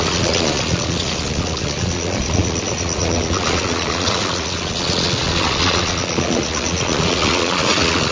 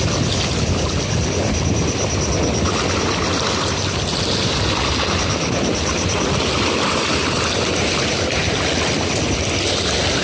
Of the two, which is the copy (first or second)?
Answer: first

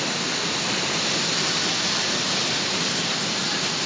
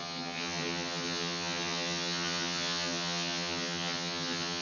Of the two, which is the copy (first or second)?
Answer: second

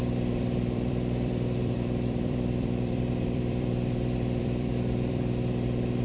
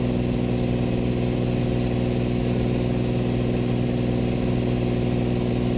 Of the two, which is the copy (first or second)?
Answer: first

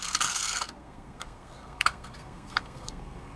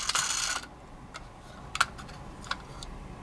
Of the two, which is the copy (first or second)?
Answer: first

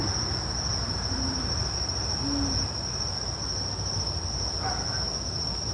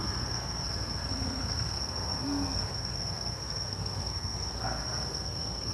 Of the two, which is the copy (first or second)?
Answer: second